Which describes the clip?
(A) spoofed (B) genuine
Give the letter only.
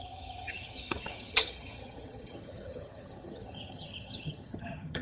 A